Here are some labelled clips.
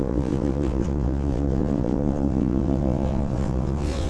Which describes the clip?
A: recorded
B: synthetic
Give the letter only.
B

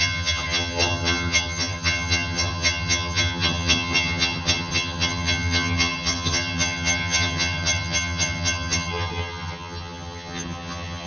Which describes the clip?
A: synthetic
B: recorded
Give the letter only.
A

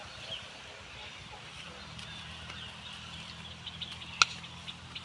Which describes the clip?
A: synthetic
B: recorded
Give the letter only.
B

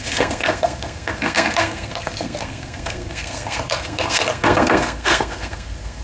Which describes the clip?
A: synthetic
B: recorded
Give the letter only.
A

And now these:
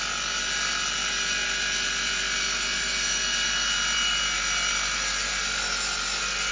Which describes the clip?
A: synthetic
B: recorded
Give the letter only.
B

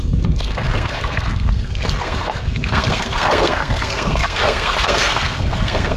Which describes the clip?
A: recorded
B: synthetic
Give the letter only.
B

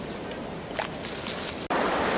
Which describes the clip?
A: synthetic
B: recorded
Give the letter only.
B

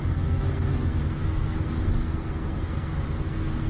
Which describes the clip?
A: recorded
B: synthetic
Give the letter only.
B